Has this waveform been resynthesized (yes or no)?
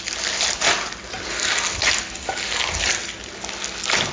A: no